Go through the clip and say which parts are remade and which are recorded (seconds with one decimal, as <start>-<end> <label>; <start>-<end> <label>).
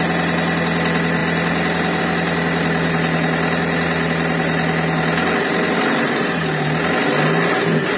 0.0-8.0 recorded